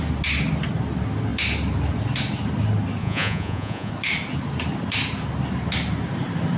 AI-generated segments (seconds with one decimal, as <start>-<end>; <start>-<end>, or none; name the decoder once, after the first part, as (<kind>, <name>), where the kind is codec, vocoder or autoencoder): 3.0-3.9 (vocoder, Vocos)

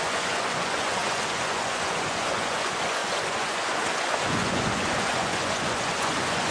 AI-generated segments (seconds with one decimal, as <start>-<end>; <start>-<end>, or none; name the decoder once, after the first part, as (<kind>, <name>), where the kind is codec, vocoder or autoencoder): 0.0-6.5 (vocoder, Vocos)

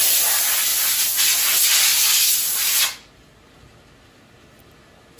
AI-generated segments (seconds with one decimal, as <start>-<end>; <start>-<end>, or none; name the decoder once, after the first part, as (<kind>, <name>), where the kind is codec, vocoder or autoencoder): none